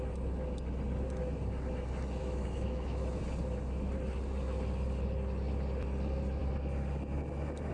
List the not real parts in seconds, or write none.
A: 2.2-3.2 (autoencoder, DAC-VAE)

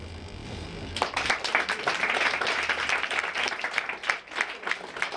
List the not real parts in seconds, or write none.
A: none

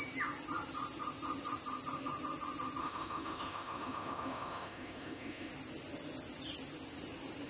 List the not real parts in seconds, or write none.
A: 2.8-5.5 (autoencoder, DAC-VAE)